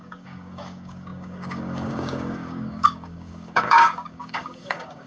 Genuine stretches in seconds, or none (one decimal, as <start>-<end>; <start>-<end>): none